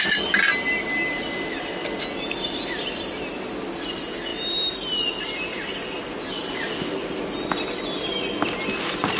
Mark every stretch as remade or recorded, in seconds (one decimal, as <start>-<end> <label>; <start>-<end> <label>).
0.0-9.2 recorded